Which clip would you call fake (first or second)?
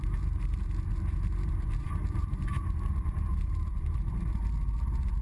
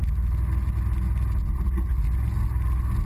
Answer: first